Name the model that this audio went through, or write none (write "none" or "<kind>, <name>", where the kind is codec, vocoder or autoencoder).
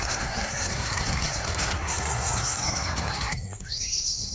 codec, SNAC